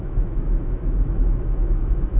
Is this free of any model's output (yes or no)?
no